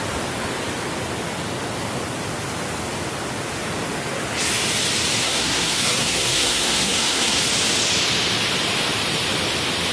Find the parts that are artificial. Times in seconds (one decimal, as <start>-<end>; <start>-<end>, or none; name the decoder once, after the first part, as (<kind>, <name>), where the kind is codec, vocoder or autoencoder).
5.2-7.4 (codec, SNAC)